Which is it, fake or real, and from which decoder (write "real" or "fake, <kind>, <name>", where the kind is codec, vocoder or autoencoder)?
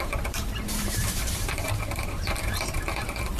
fake, vocoder, BigVGAN v2